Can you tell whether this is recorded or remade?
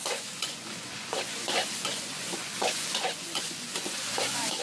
remade